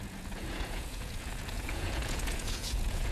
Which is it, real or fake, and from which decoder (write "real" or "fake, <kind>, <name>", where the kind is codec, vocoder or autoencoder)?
fake, vocoder, Vocos